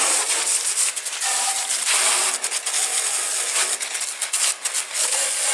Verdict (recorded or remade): recorded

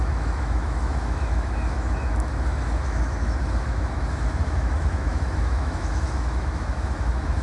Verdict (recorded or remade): remade